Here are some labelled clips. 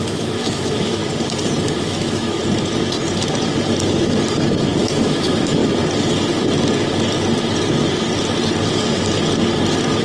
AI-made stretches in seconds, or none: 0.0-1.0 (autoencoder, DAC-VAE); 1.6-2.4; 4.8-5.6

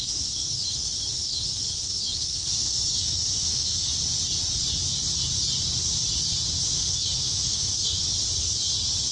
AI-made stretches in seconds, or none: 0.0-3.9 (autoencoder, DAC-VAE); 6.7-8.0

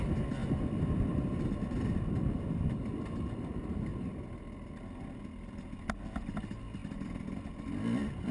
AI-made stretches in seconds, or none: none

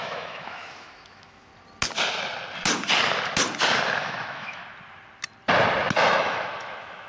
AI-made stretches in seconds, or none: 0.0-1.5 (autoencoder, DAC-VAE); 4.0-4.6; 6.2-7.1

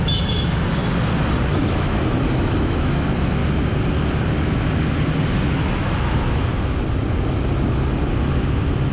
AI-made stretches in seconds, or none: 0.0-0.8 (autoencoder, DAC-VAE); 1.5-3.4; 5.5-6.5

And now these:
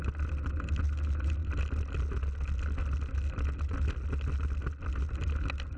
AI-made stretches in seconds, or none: none

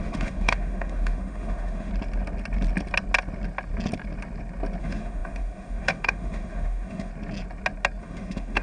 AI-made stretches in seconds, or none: 0.0-1.9 (autoencoder, DAC-VAE); 4.8-7.1; 8.0-8.6

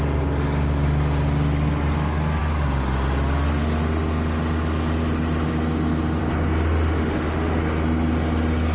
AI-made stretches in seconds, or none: 7.0-7.6 (autoencoder, DAC-VAE)